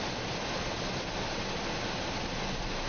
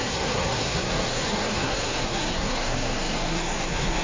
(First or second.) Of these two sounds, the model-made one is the second